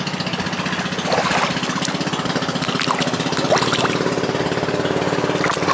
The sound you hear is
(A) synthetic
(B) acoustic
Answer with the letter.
B